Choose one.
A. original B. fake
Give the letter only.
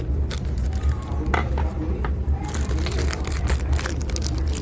A